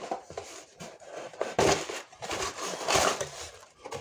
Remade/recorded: remade